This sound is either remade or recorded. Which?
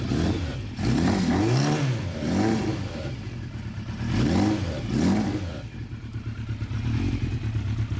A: recorded